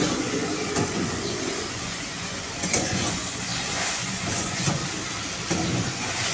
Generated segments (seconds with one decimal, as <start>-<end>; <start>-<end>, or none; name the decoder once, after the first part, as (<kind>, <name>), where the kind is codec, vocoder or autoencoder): 0.0-4.8 (vocoder, Vocos); 5.7-6.3